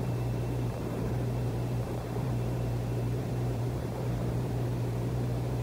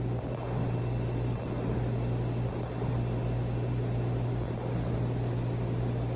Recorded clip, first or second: second